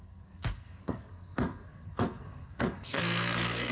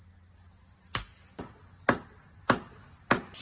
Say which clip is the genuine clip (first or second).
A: second